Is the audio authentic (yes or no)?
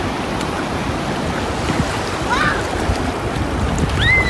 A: yes